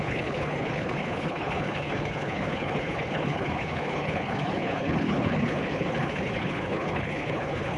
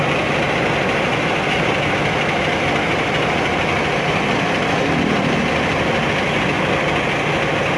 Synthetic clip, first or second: first